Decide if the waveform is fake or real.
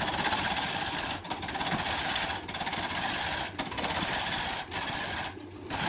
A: real